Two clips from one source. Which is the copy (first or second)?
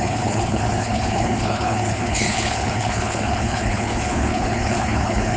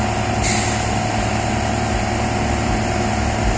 first